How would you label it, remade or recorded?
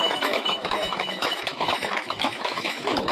remade